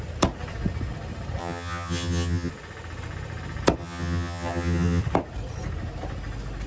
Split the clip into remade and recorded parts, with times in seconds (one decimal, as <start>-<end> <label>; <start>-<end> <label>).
0.0-1.4 recorded; 1.4-2.5 remade; 2.5-3.8 recorded; 3.8-5.0 remade; 5.0-6.7 recorded